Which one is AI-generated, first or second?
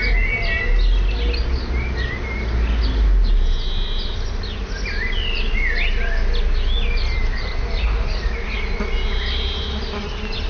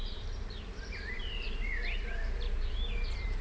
second